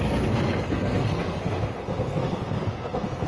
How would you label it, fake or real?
fake